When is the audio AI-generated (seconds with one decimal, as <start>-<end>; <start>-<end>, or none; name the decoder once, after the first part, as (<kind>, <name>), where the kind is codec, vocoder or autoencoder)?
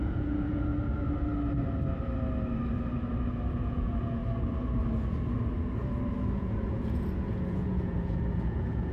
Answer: 0.0-0.7 (vocoder, Vocos); 3.5-4.2; 6.4-8.9